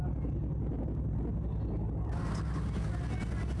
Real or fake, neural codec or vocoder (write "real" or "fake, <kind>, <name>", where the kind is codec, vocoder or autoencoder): real